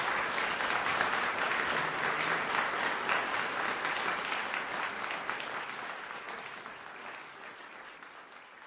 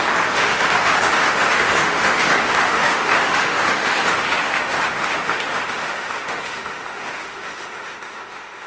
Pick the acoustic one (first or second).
first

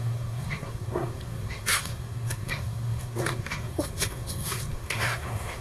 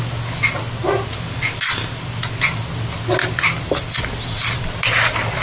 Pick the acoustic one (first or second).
second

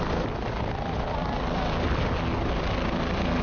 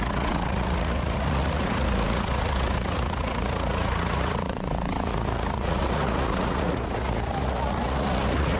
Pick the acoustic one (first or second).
first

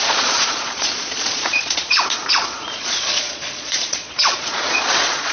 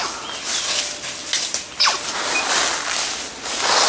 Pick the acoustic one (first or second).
second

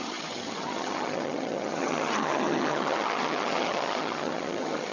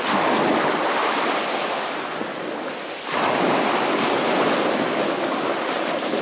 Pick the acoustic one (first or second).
second